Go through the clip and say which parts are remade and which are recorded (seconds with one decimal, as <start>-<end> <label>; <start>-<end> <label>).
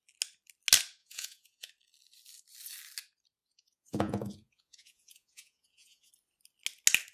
0.0-1.0 recorded; 1.0-1.7 remade; 1.7-3.4 recorded; 3.4-6.1 remade; 6.1-7.1 recorded